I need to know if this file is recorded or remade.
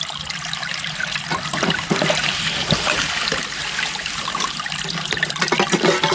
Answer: recorded